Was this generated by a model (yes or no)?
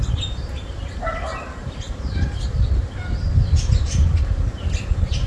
no